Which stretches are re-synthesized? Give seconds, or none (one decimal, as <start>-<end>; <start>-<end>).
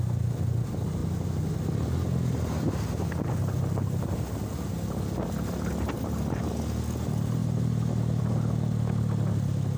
7.4-8.2